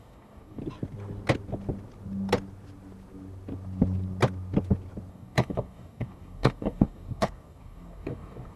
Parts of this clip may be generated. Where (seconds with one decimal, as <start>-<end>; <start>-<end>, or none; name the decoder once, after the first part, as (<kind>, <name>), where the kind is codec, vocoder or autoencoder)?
0.0-0.6 (codec, DAC); 5.1-8.6